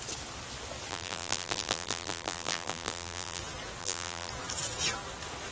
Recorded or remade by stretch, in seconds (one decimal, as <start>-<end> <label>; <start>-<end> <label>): 0.0-0.9 recorded; 0.9-3.4 remade; 3.4-3.8 recorded; 3.8-4.3 remade; 4.3-5.5 recorded